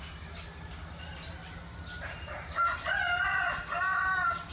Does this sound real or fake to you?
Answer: real